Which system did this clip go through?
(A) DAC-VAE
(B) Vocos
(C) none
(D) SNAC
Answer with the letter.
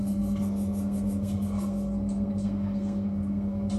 D